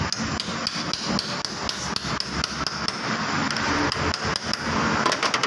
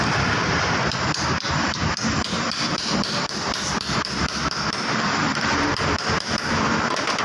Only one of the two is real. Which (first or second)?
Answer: first